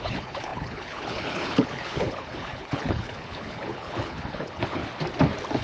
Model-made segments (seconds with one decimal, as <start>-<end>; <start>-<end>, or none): 0.0-4.8